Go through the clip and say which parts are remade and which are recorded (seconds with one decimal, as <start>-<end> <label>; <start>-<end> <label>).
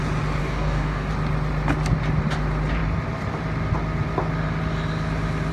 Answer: 0.0-0.4 recorded; 0.4-1.1 remade; 1.1-5.5 recorded